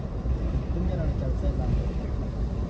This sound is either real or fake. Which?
real